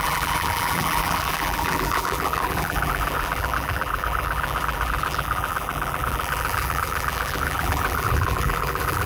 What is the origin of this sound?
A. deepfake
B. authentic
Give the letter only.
A